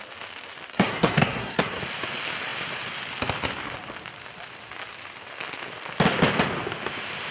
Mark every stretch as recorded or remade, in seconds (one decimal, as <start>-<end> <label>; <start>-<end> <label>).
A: 0.0-0.7 recorded; 0.7-1.8 remade; 1.8-7.3 recorded